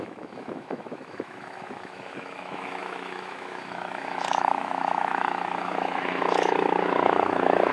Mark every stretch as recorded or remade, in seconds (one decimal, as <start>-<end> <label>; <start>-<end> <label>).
0.0-7.7 remade